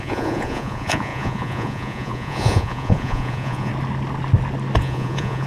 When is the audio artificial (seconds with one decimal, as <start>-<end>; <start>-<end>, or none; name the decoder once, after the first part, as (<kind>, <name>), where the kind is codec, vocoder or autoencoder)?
0.0-3.7 (vocoder, Vocos); 4.8-5.5